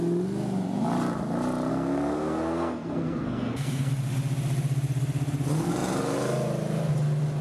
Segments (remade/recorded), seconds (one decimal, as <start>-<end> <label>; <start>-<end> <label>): 0.0-1.7 recorded; 1.7-3.9 remade; 3.9-7.4 recorded